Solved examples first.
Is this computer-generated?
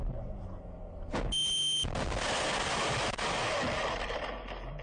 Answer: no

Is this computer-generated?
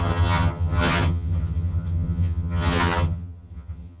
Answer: yes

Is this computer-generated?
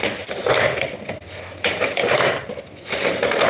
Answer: no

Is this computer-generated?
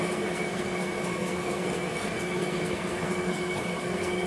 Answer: yes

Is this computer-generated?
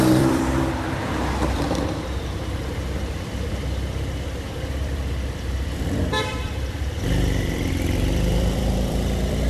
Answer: yes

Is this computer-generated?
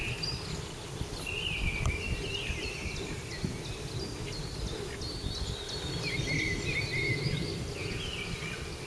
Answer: no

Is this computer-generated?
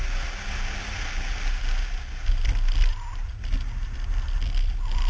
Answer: no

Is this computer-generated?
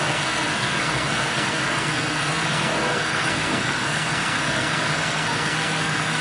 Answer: yes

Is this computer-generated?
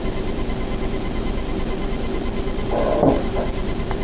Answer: no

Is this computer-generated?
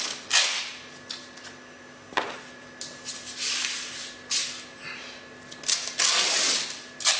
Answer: no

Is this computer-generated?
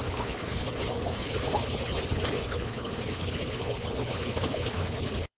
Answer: yes